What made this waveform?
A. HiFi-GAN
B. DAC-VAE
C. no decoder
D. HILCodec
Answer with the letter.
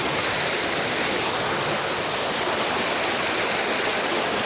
C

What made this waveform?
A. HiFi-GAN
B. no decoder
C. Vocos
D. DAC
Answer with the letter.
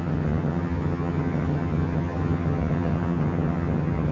A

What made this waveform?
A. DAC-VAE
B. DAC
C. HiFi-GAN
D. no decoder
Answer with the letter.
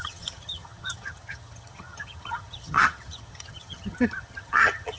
C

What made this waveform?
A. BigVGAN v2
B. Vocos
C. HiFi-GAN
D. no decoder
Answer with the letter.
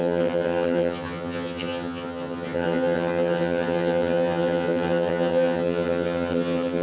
C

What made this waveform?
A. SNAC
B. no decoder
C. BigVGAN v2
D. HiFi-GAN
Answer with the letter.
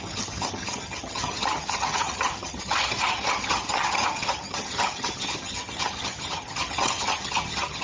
D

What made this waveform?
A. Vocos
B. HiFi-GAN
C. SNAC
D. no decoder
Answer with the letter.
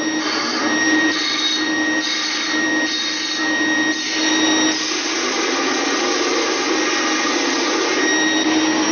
D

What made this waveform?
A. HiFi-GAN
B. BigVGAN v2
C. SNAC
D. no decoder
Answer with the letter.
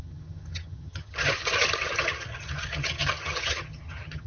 A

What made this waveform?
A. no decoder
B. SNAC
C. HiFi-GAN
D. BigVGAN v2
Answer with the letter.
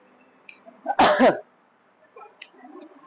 A